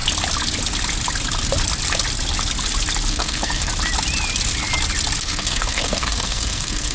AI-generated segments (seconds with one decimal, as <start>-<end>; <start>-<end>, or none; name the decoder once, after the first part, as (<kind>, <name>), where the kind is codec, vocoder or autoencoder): 3.1-3.7 (codec, SNAC); 5.2-6.9